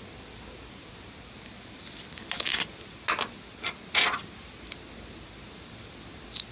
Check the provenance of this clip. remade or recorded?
recorded